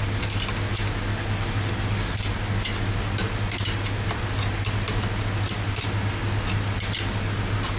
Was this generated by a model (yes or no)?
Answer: no